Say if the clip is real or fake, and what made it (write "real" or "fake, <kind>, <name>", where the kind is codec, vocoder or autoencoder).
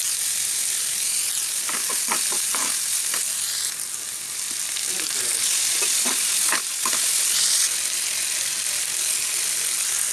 real